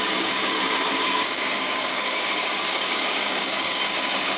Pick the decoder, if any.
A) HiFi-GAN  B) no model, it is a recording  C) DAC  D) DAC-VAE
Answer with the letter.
C